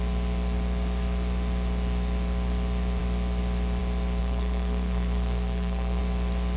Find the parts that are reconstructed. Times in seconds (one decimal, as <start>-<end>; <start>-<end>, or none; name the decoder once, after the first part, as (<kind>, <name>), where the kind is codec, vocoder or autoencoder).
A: 4.2-6.0 (codec, SNAC)

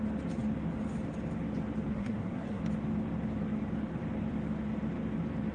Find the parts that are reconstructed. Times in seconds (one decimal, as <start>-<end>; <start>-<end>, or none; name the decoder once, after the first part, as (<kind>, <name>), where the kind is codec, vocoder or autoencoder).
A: 1.9-2.6 (codec, SNAC)

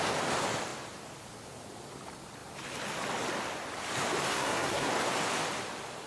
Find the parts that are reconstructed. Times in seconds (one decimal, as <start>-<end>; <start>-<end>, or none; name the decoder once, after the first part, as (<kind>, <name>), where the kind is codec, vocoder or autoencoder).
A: 4.3-4.9 (codec, SNAC)

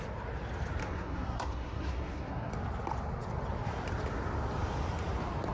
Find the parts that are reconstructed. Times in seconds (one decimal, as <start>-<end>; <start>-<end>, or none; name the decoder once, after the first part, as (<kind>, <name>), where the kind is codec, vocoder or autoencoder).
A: 0.8-2.5 (codec, SNAC)

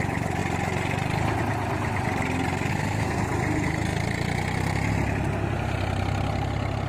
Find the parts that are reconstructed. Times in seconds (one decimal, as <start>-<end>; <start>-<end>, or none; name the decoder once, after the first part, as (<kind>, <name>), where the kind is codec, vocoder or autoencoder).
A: 2.7-3.2 (codec, SNAC)

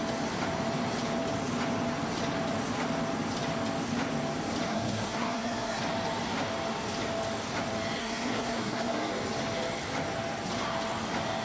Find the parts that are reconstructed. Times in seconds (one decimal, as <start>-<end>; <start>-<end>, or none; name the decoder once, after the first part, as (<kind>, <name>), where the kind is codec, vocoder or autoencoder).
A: 4.7-5.8 (codec, SNAC); 8.0-9.1

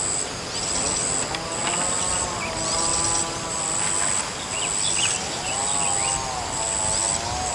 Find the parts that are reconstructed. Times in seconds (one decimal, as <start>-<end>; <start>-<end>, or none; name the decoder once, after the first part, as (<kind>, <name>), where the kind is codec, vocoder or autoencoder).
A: none

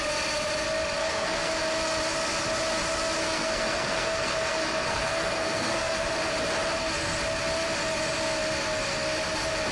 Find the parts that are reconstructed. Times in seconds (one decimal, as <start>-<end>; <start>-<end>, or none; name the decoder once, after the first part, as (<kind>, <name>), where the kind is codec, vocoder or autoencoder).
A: 1.0-1.5 (codec, SNAC); 3.2-6.1